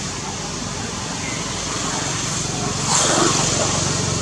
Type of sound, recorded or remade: recorded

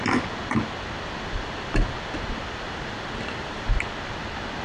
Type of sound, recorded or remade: recorded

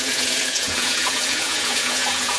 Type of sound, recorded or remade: remade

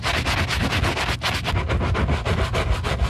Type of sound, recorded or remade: recorded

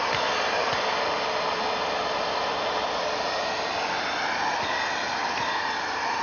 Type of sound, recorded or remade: recorded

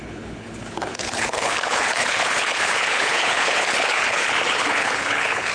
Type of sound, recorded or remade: remade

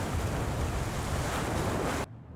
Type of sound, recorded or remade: recorded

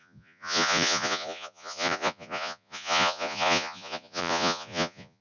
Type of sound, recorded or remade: remade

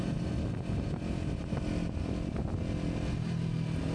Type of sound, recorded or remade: recorded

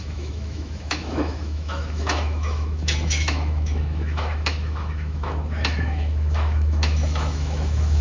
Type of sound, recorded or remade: remade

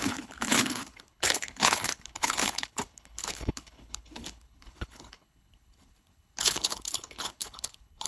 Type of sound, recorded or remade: remade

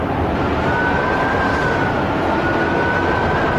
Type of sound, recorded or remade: recorded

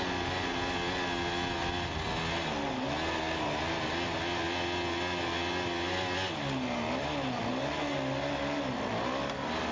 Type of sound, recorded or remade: recorded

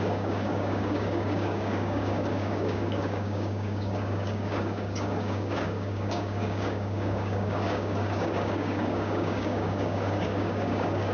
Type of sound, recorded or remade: remade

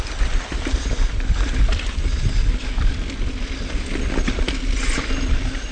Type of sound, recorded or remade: recorded